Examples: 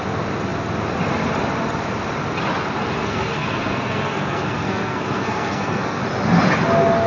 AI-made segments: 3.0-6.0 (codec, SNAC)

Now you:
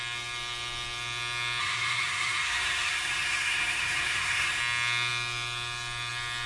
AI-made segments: 1.6-4.6 (codec, SNAC)

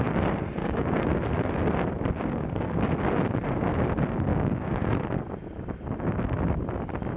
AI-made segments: 0.6-1.2 (codec, DAC); 2.4-2.9; 4.3-4.9

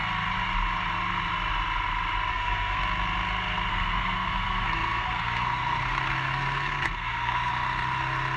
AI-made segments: 2.3-2.8 (codec, SNAC); 3.7-7.5